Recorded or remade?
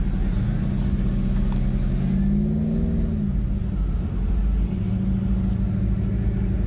recorded